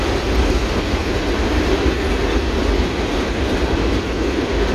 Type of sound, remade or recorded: recorded